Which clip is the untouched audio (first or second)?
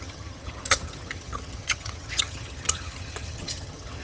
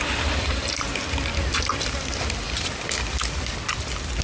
second